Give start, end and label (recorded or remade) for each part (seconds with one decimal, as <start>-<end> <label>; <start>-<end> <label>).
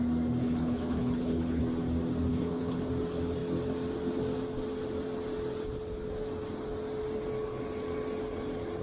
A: 0.0-0.4 recorded; 0.4-1.6 remade; 1.6-2.3 recorded; 2.3-2.9 remade; 2.9-8.8 recorded